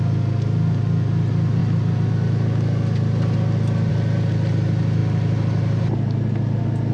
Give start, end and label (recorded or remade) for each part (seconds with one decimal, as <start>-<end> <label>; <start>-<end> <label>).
0.0-6.9 recorded